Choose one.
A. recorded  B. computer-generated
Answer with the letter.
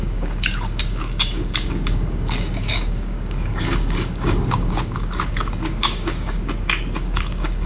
B